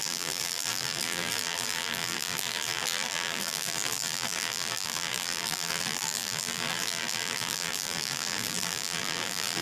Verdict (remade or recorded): remade